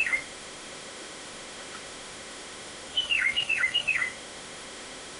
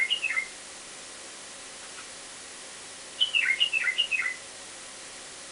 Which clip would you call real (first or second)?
second